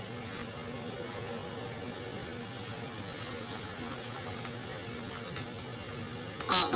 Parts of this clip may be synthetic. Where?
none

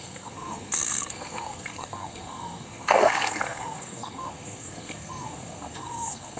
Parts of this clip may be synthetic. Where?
0.0-6.4

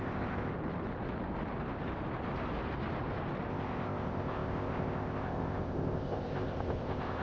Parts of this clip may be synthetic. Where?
0.0-0.5; 3.5-7.2

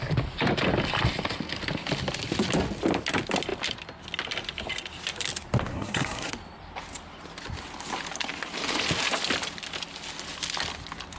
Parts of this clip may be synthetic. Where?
5.7-6.3

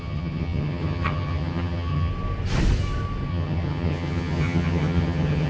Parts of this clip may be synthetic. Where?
0.0-2.1; 3.3-5.5

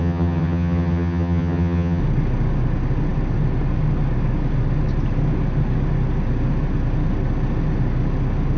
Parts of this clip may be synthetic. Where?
0.0-2.0

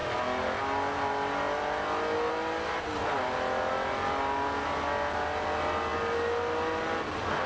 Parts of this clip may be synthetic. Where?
none